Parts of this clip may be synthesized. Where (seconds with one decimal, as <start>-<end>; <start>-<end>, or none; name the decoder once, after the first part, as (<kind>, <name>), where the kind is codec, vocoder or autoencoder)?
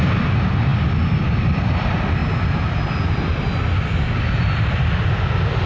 none